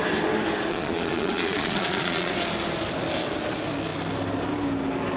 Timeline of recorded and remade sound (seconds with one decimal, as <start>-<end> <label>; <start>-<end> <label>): 0.0-0.7 recorded; 0.7-2.3 remade; 2.3-5.2 recorded